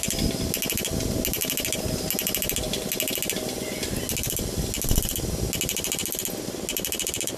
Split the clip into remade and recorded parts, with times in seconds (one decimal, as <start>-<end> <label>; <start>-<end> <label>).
0.0-7.4 recorded